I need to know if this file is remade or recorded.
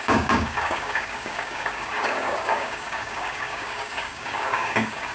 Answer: remade